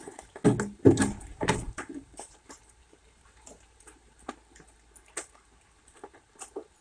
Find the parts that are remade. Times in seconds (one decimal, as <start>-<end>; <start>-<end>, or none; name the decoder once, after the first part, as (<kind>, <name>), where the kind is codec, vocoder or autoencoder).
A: 1.3-4.3 (vocoder, BigVGAN v2)